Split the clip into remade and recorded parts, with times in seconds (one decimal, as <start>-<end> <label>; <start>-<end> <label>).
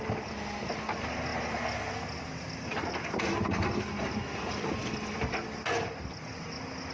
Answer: 0.0-1.3 remade; 1.3-3.2 recorded; 3.2-6.9 remade